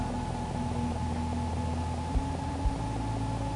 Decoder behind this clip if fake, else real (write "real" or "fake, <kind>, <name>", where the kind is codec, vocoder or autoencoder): real